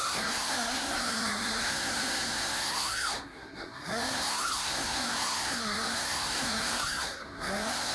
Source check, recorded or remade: remade